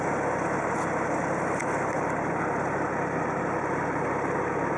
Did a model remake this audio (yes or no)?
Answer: no